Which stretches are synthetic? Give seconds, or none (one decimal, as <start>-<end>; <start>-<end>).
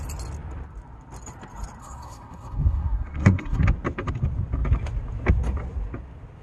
1.8-3.6